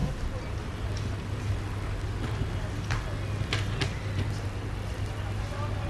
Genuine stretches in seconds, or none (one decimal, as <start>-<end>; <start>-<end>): 0.6-5.9